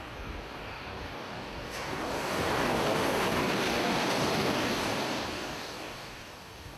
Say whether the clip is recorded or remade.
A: remade